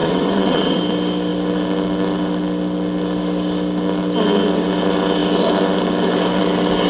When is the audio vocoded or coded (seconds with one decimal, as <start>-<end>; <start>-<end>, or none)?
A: 0.0-0.8